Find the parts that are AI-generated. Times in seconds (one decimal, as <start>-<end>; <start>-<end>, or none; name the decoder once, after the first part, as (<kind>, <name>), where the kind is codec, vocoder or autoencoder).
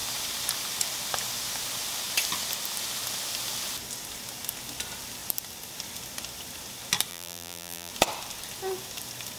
7.1-7.9 (vocoder, BigVGAN v2)